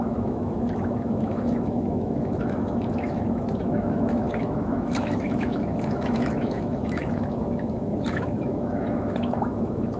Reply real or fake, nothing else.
fake